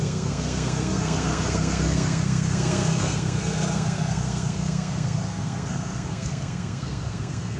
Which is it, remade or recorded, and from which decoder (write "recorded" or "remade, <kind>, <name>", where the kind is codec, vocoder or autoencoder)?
remade, codec, SNAC